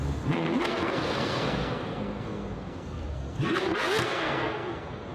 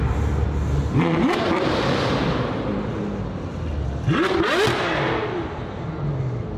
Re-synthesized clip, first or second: first